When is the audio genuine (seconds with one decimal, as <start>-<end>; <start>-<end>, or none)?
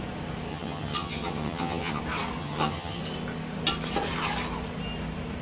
0.0-0.5; 2.0-2.4; 3.0-5.4